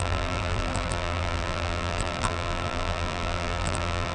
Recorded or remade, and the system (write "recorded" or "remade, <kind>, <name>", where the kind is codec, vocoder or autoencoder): remade, vocoder, BigVGAN v2